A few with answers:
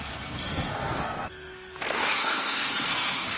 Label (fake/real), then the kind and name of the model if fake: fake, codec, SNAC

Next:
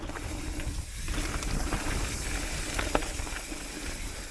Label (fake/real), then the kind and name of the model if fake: real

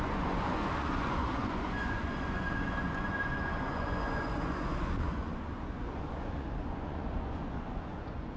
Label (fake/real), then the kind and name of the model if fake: fake, vocoder, Vocos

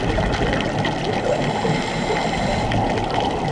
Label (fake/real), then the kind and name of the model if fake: real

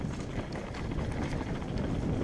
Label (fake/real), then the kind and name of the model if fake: real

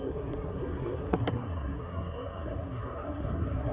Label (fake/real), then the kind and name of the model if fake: fake, codec, SNAC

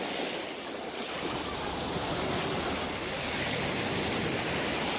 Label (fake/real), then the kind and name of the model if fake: real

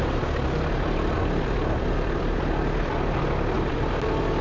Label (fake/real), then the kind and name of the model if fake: real